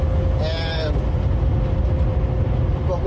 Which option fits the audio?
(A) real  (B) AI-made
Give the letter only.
A